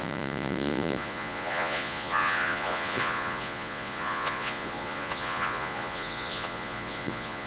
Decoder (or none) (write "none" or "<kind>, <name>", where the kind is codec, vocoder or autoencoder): vocoder, Vocos